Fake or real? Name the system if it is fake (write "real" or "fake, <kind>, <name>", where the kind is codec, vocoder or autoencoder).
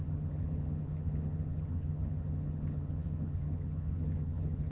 fake, vocoder, HiFi-GAN